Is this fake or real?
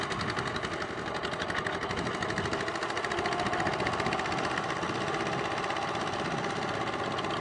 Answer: real